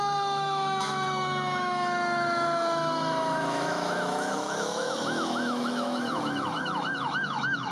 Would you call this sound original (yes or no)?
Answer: no